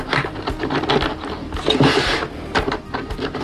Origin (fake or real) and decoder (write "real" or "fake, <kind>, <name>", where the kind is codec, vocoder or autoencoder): real